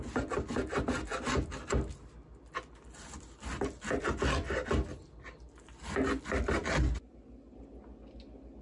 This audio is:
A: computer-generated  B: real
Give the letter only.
B